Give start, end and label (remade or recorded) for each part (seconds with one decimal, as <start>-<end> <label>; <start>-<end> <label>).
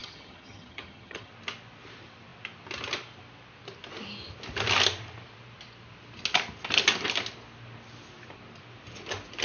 0.0-1.3 remade; 1.3-9.4 recorded